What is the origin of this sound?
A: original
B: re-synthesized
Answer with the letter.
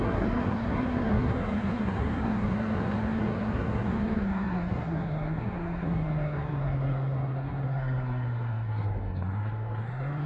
B